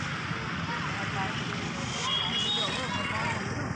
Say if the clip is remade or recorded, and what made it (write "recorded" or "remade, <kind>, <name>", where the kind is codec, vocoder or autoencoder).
recorded